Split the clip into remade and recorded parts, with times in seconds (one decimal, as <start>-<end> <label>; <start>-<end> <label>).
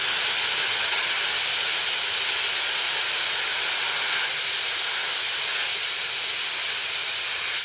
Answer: 0.0-0.6 recorded; 0.6-1.2 remade; 1.2-7.6 recorded